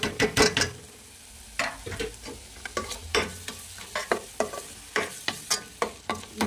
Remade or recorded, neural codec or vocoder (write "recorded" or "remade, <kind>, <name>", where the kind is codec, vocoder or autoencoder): recorded